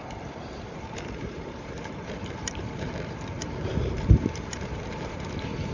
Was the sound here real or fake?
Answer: fake